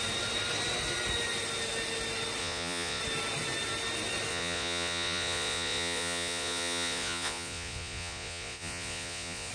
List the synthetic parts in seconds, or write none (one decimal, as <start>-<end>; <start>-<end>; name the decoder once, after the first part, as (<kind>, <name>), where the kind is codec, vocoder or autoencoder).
2.4-3.0 (vocoder, Vocos); 4.3-9.5